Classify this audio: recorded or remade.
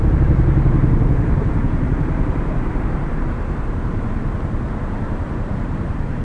remade